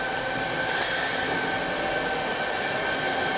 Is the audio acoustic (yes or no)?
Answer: yes